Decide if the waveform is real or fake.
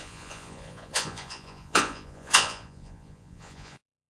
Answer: fake